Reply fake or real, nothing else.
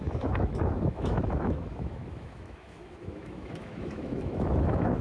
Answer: fake